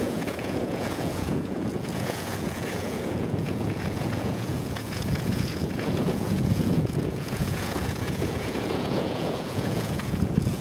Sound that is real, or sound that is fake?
fake